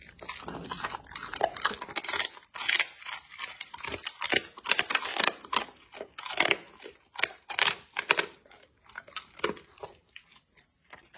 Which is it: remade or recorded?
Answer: recorded